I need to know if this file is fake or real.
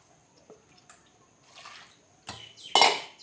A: real